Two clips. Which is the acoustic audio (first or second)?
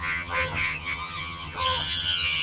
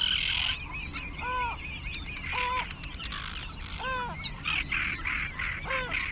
second